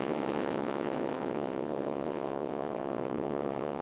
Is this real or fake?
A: fake